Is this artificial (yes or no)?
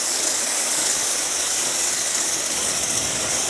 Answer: yes